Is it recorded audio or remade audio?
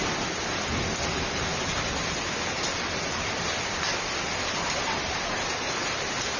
recorded